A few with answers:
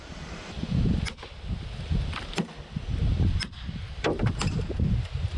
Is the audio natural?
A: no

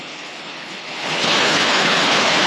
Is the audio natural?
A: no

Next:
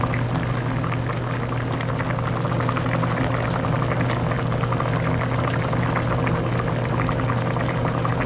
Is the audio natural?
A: yes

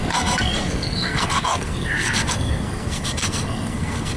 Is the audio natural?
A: no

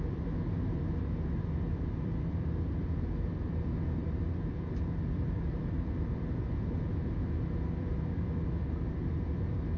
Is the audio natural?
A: no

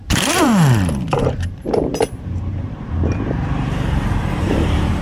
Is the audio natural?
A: no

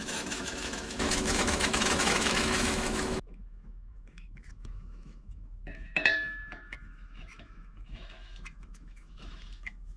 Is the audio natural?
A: no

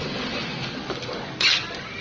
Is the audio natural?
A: yes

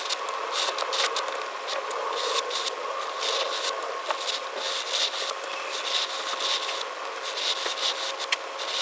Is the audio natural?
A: yes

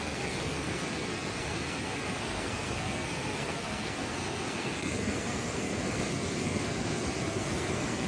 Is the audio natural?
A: no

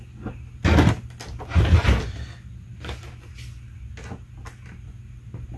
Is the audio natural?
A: yes